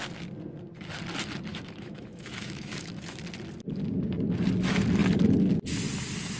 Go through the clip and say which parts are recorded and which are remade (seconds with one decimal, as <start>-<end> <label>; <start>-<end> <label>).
0.0-1.5 recorded; 1.5-3.2 remade; 3.2-6.4 recorded